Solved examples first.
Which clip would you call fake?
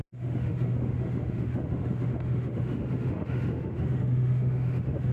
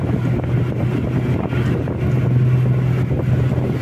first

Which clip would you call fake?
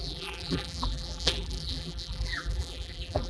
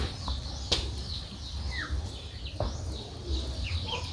first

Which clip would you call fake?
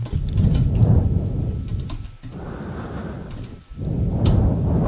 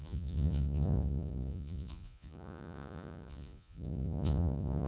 second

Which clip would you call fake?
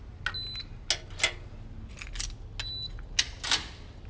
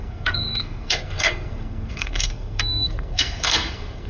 second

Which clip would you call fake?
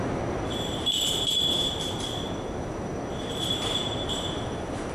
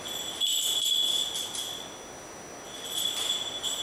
first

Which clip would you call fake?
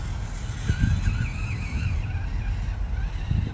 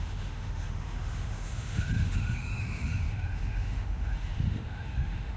second